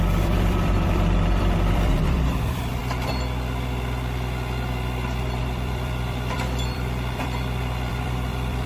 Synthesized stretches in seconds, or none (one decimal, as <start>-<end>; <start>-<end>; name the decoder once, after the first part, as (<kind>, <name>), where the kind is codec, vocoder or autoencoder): 0.0-2.8 (vocoder, BigVGAN v2); 5.4-8.7